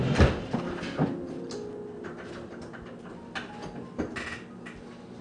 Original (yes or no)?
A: yes